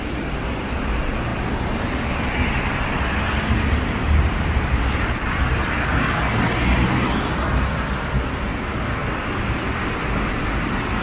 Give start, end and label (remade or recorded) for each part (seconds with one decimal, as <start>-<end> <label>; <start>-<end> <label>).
0.0-11.0 recorded